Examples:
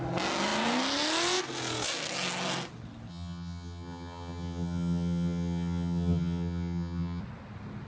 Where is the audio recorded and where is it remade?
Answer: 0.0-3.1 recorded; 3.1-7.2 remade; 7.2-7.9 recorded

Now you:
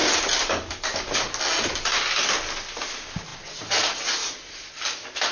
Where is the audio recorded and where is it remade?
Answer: 0.0-5.3 recorded

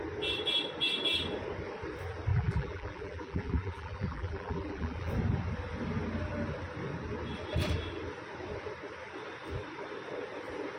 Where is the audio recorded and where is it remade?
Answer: 0.0-2.3 recorded; 2.3-5.1 remade; 5.1-10.8 recorded

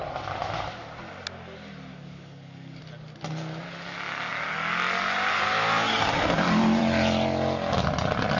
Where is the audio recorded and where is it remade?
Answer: 0.0-1.9 recorded; 1.9-2.8 remade; 2.8-8.4 recorded

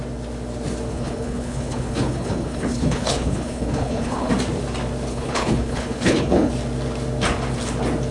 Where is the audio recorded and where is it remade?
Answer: 0.0-0.9 recorded; 0.9-4.3 remade; 4.3-5.1 recorded; 5.1-6.5 remade; 6.5-8.1 recorded

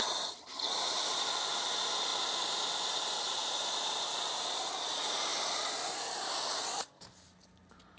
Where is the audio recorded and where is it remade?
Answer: 0.0-8.0 recorded

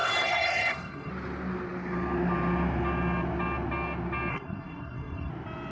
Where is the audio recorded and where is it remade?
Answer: 0.0-1.1 remade; 1.1-4.3 recorded; 4.3-5.3 remade; 5.3-5.7 recorded